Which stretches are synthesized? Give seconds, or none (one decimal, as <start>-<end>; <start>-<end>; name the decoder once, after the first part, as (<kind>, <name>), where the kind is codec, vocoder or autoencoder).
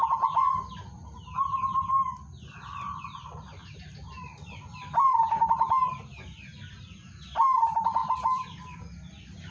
none